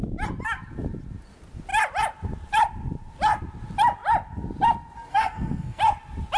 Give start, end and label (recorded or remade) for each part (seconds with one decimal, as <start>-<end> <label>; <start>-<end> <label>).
0.0-5.1 recorded; 5.1-5.8 remade; 5.8-6.4 recorded